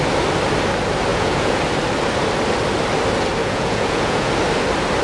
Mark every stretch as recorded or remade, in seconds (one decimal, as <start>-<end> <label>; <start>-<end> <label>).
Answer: 0.0-1.1 recorded; 1.1-1.6 remade; 1.6-3.4 recorded; 3.4-4.3 remade; 4.3-5.0 recorded